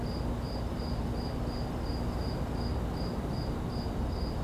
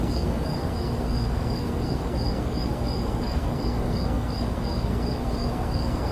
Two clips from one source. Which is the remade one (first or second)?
second